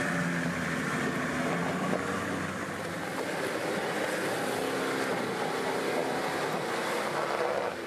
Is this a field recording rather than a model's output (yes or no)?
yes